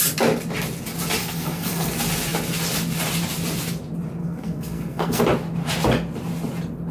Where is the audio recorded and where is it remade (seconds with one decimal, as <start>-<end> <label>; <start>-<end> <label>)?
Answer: 0.0-1.2 recorded; 1.2-1.9 remade; 1.9-4.2 recorded; 4.2-5.2 remade; 5.2-6.9 recorded